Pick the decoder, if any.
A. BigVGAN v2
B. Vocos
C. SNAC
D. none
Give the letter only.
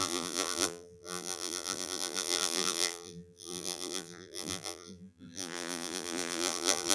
A